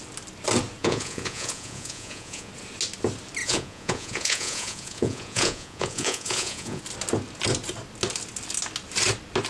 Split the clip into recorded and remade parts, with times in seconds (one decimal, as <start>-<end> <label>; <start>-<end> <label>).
0.0-0.8 recorded; 0.8-2.5 remade; 2.5-3.4 recorded; 3.4-6.8 remade; 6.8-9.5 recorded